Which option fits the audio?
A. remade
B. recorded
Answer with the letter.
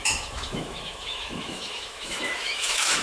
A